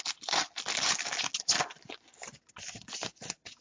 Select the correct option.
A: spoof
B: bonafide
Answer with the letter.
B